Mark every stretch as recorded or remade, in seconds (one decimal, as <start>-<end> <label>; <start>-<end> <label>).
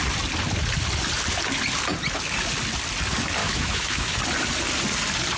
0.0-3.4 recorded; 3.4-4.1 remade; 4.1-5.4 recorded